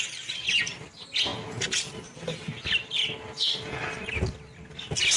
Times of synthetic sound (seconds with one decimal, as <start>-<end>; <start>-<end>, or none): none